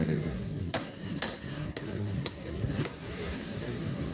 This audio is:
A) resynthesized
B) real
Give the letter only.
A